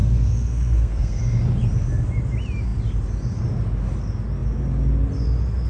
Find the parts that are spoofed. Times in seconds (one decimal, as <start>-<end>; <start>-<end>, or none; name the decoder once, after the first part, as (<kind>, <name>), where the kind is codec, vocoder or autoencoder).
0.0-1.2 (codec, SNAC)